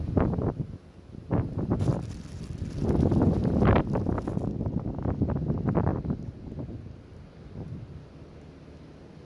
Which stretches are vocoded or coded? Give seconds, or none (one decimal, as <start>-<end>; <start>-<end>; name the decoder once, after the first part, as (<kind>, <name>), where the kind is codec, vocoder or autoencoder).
1.9-4.0 (vocoder, BigVGAN v2); 5.9-8.0